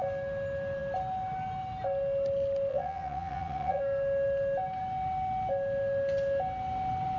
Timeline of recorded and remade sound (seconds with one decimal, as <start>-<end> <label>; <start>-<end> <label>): 0.0-2.7 recorded; 2.7-3.8 remade; 3.8-7.2 recorded